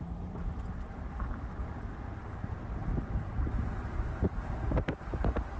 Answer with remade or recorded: remade